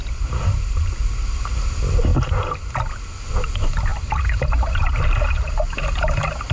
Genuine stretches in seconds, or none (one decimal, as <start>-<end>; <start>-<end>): 1.5-3.9; 5.5-6.5